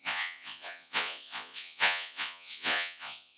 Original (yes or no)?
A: no